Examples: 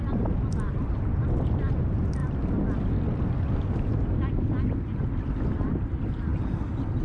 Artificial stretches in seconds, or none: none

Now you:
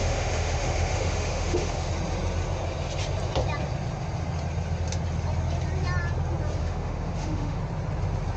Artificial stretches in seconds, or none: 0.0-1.9 (autoencoder, DAC-VAE); 6.6-7.6

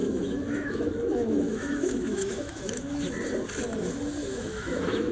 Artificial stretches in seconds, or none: 0.0-3.1 (autoencoder, DAC-VAE); 4.2-5.1

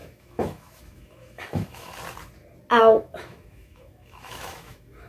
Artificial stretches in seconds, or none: 0.0-1.9 (autoencoder, DAC-VAE); 2.8-5.1